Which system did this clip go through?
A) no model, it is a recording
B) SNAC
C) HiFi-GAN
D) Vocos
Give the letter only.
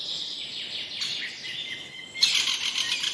A